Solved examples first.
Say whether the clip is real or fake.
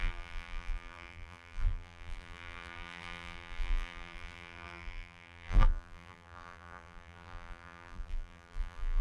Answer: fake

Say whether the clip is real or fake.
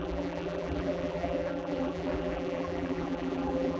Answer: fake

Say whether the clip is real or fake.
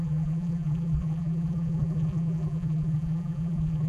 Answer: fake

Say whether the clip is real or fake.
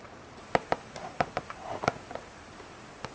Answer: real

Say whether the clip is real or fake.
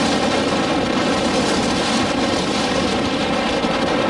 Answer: fake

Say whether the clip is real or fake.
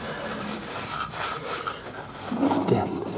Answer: fake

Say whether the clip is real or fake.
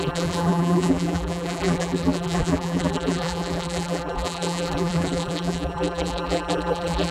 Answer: fake